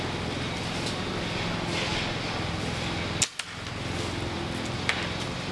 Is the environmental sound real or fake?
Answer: real